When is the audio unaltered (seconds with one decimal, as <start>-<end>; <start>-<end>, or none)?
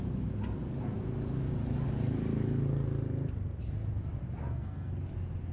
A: 0.0-4.4; 4.9-5.5